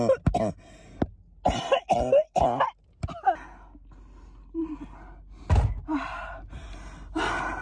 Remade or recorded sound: recorded